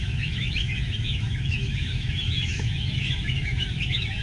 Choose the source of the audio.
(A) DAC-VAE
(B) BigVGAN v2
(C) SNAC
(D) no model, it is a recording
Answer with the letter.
A